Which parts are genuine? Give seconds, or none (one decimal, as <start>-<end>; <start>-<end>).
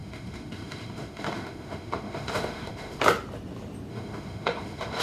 3.0-3.9